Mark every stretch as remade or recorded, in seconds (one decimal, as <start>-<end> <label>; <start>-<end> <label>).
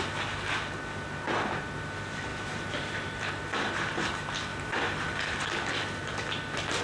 0.0-2.3 recorded; 2.3-3.3 remade; 3.3-4.5 recorded; 4.5-5.2 remade; 5.2-6.8 recorded